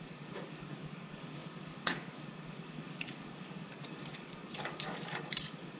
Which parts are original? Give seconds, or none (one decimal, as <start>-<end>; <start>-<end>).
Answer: none